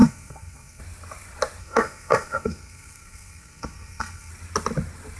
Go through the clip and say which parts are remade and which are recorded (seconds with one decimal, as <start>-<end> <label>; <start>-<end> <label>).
0.0-0.8 remade; 0.8-1.6 recorded; 1.6-4.3 remade; 4.3-5.2 recorded